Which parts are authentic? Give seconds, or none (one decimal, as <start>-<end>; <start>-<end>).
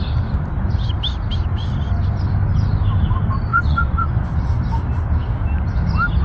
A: 0.0-3.5; 4.1-6.2